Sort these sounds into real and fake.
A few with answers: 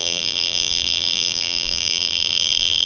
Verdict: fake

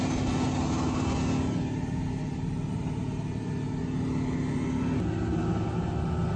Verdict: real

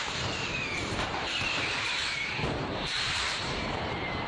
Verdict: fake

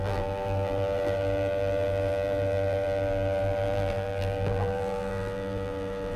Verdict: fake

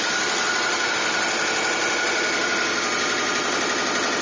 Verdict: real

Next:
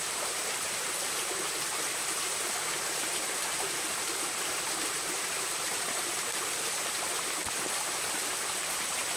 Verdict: fake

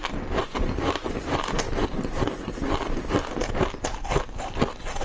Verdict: real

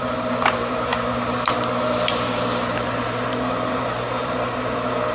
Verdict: fake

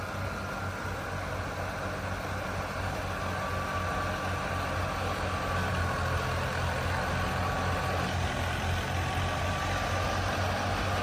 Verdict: real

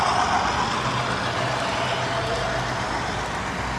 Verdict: real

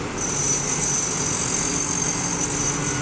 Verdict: real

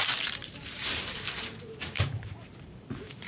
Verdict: fake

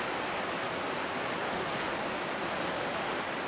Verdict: real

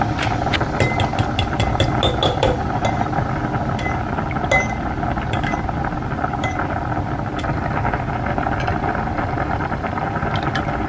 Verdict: real